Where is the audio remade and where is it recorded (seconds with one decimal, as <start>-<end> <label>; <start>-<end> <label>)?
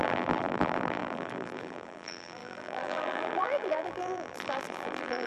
0.0-5.3 remade